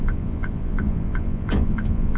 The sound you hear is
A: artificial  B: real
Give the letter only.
A